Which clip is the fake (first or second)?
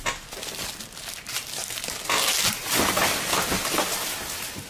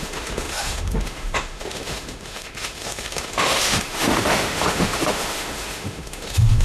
second